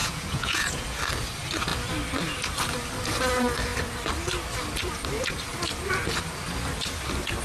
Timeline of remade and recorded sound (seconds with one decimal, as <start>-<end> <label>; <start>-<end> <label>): 0.0-1.0 remade; 1.0-7.4 recorded